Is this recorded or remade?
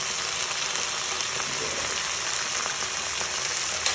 recorded